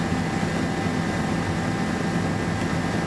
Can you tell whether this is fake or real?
real